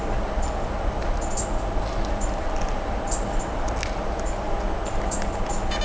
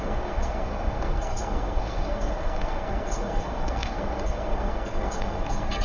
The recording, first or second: first